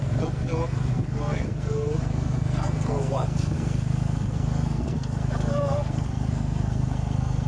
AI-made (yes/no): yes